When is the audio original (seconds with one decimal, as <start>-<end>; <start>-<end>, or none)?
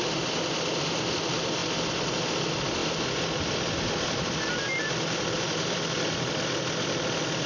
0.0-7.5